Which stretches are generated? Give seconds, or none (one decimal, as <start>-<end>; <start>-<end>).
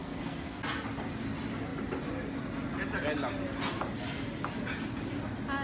0.0-0.6